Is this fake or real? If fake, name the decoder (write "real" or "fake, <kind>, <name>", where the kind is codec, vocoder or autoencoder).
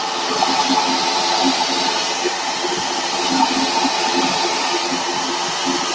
real